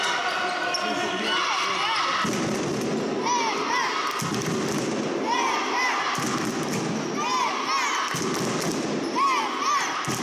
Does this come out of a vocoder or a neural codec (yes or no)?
no